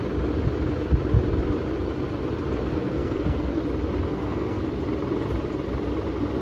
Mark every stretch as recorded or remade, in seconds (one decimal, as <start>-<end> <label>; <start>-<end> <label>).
0.0-2.7 recorded; 2.7-3.6 remade; 3.6-4.1 recorded; 4.1-4.6 remade; 4.6-6.4 recorded